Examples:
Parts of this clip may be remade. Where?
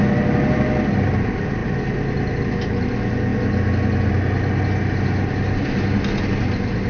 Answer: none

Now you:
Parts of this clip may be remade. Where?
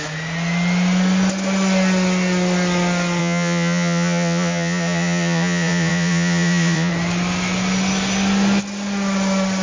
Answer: 3.2-6.9 (vocoder, Vocos)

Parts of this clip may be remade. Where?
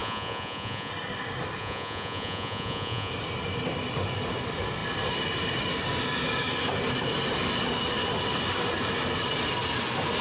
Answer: 0.0-0.9 (vocoder, Vocos); 1.6-3.1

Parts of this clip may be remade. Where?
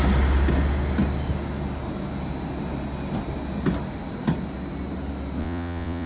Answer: 5.4-6.1 (vocoder, Vocos)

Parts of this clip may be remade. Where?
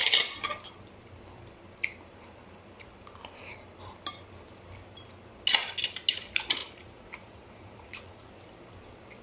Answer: 6.6-8.3 (vocoder, Vocos)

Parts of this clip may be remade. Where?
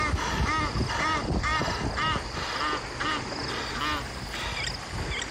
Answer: none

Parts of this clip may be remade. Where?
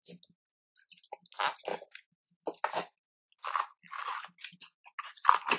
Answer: none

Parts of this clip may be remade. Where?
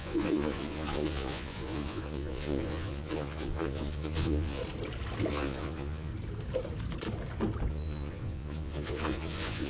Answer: 0.0-4.6 (vocoder, Vocos); 5.3-6.1; 7.7-9.7